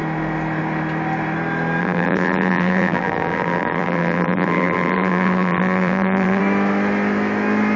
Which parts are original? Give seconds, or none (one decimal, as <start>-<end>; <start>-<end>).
0.0-1.8; 6.4-7.8